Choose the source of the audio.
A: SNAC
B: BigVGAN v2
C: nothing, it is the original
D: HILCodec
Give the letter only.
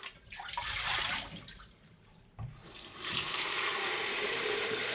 B